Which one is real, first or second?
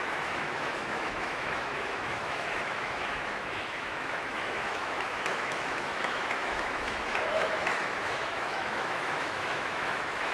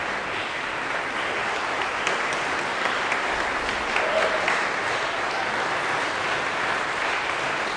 second